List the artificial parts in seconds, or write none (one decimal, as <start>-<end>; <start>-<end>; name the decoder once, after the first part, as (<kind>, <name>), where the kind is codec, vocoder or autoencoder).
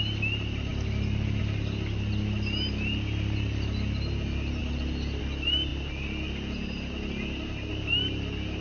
none